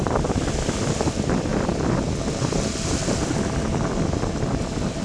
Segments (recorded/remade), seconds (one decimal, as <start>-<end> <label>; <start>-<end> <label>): 0.0-5.0 recorded